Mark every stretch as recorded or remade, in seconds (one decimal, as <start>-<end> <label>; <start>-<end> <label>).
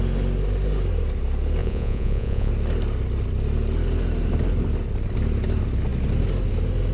0.0-1.6 recorded; 1.6-2.5 remade; 2.5-6.9 recorded